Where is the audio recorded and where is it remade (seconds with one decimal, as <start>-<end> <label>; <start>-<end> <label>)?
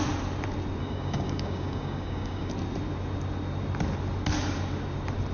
0.0-0.8 recorded; 0.8-2.5 remade; 2.5-5.3 recorded